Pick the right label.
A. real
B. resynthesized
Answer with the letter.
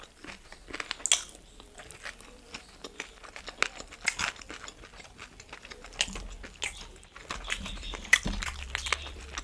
A